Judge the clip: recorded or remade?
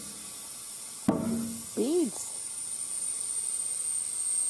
recorded